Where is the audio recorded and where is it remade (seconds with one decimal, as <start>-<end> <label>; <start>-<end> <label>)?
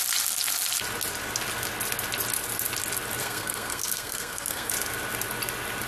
0.0-3.2 recorded; 3.2-4.7 remade; 4.7-5.9 recorded